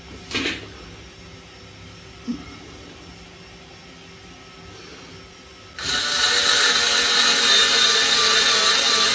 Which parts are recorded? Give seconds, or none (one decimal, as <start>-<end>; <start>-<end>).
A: 0.0-9.1